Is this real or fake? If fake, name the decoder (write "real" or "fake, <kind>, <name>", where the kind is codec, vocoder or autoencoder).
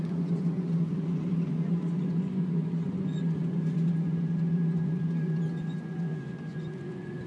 fake, vocoder, Vocos